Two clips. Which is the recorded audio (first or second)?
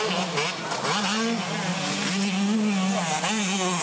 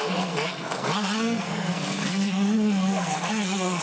first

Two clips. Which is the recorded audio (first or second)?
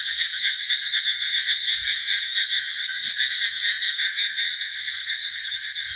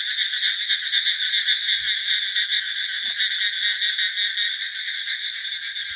second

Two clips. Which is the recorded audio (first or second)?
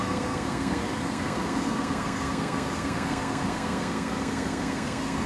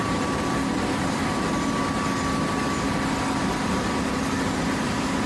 second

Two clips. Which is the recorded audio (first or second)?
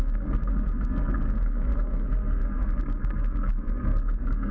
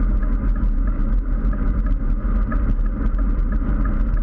second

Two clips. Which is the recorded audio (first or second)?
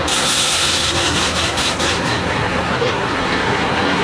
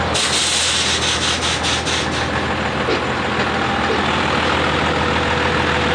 second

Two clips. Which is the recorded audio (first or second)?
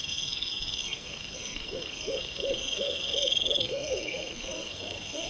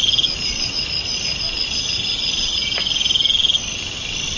second